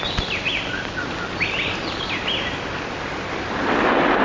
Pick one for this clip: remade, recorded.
recorded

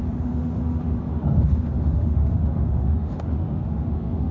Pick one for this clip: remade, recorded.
remade